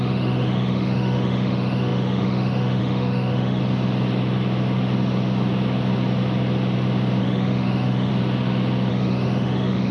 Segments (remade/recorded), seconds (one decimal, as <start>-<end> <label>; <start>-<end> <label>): 0.0-3.6 remade; 3.6-7.2 recorded; 7.2-8.1 remade; 8.1-8.9 recorded; 8.9-9.9 remade